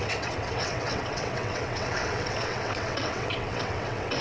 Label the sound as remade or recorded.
remade